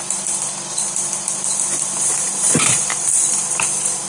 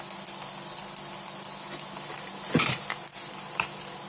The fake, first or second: first